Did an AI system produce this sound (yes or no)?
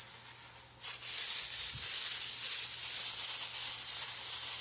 no